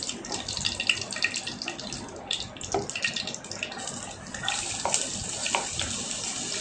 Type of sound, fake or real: real